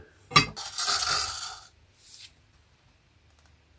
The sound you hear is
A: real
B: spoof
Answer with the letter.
A